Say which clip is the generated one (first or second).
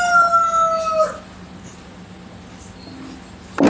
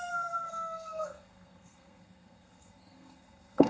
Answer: second